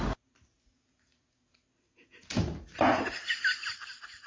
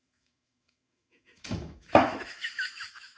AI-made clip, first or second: second